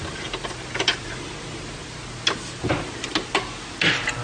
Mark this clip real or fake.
real